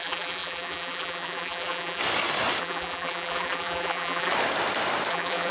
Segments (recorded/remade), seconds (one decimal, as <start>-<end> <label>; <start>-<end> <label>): 0.0-2.0 remade; 2.0-2.6 recorded; 2.6-4.3 remade; 4.3-5.1 recorded; 5.1-5.5 remade